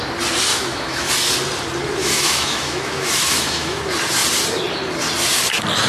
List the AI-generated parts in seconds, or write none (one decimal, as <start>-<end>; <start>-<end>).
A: 0.5-1.1; 2.0-3.8